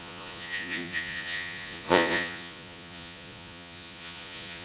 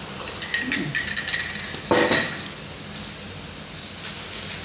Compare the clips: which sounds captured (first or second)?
second